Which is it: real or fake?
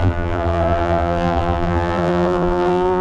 fake